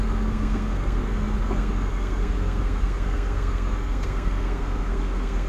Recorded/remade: remade